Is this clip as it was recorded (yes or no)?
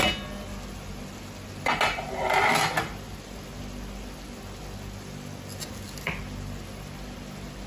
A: yes